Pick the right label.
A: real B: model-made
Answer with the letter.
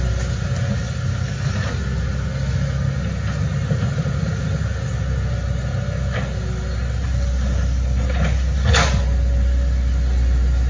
A